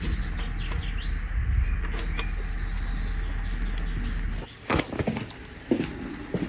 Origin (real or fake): real